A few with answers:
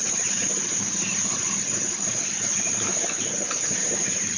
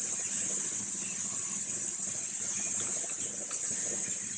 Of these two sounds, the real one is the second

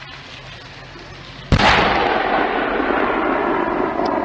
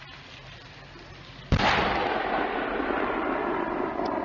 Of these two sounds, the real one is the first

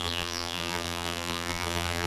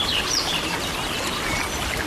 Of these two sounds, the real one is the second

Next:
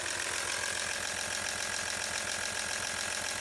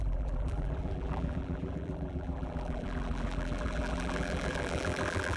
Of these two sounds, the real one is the first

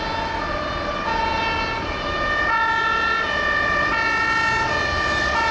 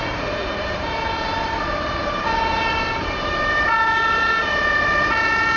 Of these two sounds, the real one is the first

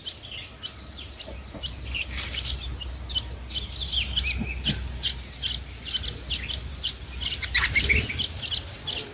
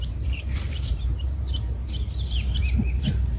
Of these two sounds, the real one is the first